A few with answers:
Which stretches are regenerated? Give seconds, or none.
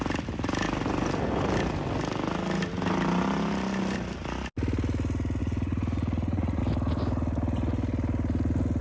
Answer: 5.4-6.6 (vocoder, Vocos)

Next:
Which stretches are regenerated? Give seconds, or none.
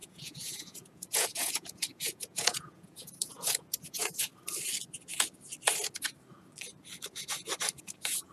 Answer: 0.0-4.3 (vocoder, Vocos); 7.8-8.3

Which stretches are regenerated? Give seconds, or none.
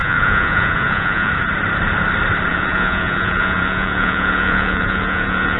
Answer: 0.0-1.3 (vocoder, Vocos); 2.5-5.6